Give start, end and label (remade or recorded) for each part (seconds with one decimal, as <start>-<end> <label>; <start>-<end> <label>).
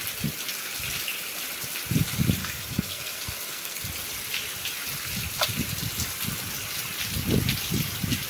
0.0-2.4 recorded; 2.4-3.8 remade; 3.8-8.3 recorded